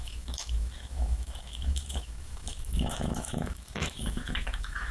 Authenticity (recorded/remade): remade